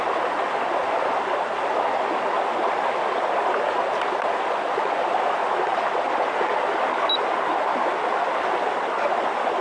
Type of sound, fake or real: real